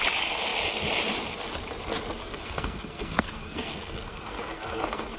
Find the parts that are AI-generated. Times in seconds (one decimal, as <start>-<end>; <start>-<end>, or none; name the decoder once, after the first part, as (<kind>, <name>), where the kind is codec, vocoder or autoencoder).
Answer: 2.2-5.2 (codec, SNAC)